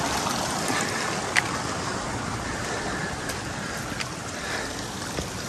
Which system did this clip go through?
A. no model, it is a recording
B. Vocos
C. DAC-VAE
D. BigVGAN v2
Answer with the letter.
A